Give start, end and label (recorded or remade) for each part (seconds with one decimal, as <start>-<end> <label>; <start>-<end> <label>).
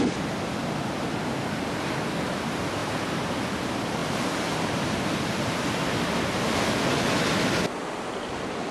0.0-8.7 recorded